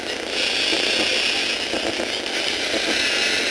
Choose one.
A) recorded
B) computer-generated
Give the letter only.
A